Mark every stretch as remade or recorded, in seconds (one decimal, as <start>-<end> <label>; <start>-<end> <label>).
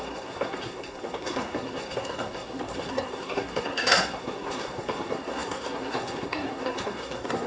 0.0-7.5 remade